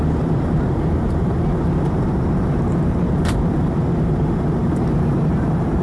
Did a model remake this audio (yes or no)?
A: yes